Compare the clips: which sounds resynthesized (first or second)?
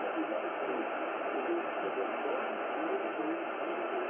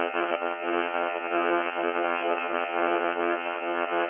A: second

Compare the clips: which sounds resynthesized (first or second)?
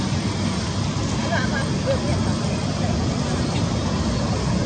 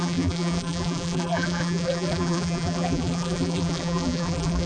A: second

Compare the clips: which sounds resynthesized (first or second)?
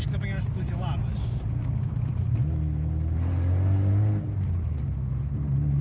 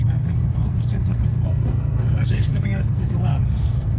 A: second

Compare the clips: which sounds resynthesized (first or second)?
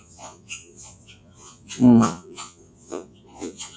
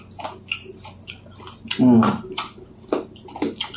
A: first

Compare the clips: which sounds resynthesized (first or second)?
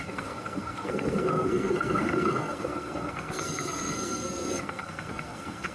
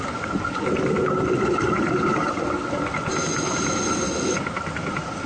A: first